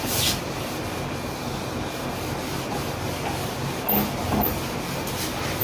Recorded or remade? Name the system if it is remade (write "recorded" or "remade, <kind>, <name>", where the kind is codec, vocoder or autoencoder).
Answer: recorded